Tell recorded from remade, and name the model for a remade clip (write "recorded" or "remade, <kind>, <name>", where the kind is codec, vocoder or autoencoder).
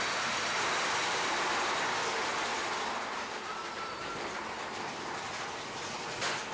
recorded